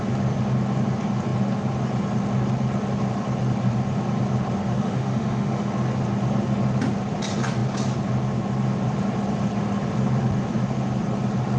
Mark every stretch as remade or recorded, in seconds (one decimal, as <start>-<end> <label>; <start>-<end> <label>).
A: 0.0-4.7 recorded; 4.7-5.7 remade; 5.7-11.6 recorded